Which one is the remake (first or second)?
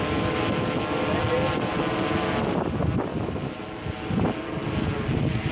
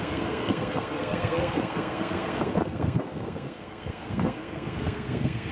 second